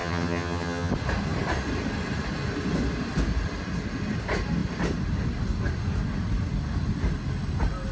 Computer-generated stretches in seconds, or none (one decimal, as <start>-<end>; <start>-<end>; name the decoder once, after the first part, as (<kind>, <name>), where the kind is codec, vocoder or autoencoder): 0.0-0.9 (vocoder, HiFi-GAN)